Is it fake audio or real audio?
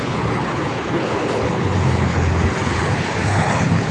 fake